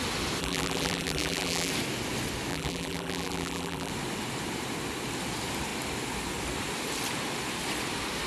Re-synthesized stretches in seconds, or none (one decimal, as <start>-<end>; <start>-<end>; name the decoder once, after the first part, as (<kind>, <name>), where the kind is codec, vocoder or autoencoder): 0.4-1.7 (vocoder, BigVGAN v2); 2.5-3.9